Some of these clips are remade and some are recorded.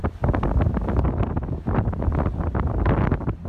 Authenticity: recorded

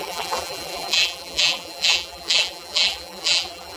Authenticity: remade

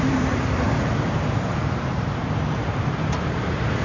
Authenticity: remade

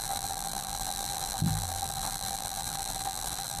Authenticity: remade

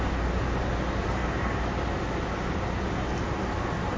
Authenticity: recorded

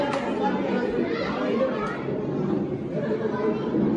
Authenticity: recorded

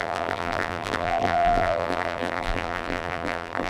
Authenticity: remade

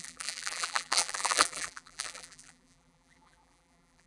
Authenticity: remade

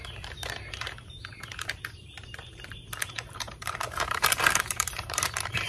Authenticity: remade